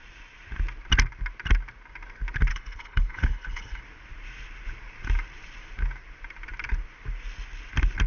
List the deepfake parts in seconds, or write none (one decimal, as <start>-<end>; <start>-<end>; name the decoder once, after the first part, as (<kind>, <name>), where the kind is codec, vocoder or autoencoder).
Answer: 2.5-3.8 (codec, HILCodec)